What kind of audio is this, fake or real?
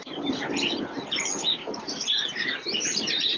real